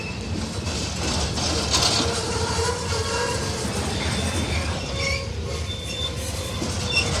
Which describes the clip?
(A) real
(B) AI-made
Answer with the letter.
A